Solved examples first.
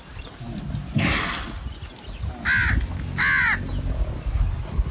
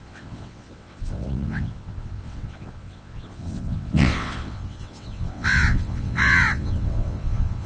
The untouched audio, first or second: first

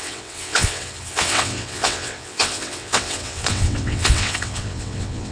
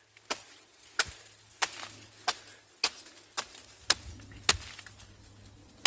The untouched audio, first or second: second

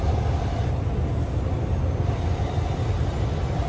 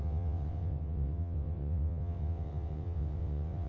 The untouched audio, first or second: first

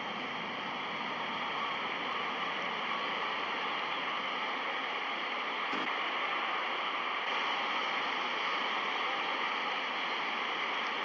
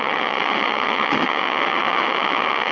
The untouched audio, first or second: first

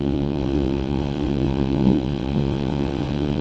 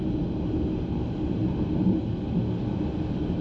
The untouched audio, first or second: second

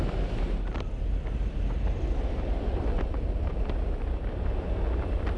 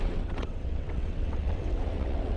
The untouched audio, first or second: first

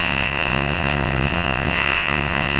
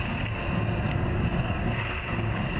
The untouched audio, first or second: second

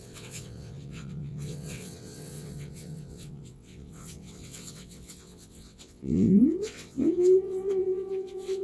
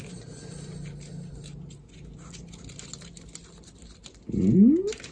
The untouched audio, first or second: second